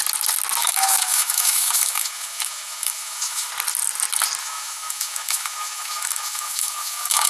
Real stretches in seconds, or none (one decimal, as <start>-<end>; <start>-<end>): 0.0-0.6; 3.5-4.4